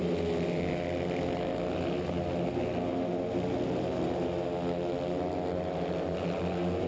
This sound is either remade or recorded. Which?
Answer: recorded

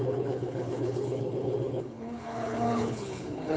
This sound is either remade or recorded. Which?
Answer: remade